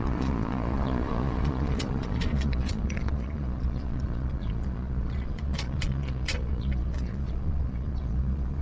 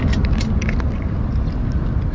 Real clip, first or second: second